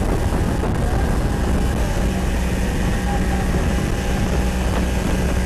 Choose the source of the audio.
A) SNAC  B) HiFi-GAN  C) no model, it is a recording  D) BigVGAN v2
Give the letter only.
C